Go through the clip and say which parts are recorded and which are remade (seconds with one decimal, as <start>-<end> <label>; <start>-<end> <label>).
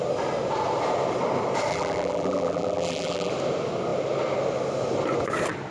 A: 0.0-1.7 recorded; 1.7-3.3 remade; 3.3-5.7 recorded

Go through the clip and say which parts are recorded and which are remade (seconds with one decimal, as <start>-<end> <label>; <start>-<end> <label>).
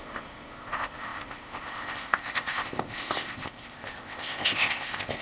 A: 0.0-5.2 remade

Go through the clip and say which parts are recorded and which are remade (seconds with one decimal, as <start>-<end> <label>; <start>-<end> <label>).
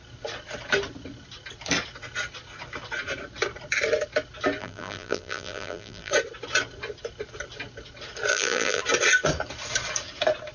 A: 0.0-4.6 recorded; 4.6-6.1 remade; 6.1-8.3 recorded; 8.3-8.8 remade; 8.8-10.5 recorded